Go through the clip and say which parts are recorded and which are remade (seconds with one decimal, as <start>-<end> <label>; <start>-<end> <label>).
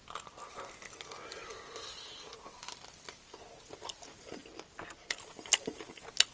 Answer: 0.0-6.3 recorded